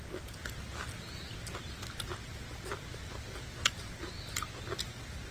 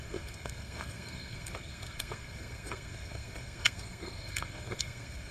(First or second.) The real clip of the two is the first